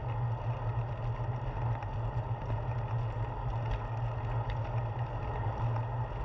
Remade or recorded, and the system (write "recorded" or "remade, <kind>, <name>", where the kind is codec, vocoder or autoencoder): recorded